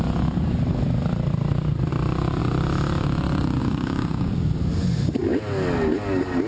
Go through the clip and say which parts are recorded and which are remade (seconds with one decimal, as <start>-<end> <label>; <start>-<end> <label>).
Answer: 0.0-3.6 recorded; 3.6-4.3 remade; 4.3-6.5 recorded